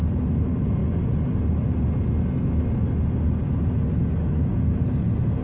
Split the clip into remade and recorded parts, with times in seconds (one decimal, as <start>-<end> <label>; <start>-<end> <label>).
0.0-5.4 recorded